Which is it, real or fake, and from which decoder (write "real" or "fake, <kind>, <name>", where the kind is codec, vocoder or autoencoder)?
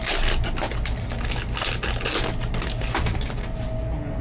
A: real